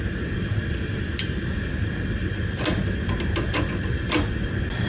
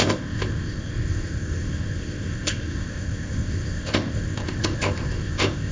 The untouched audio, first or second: first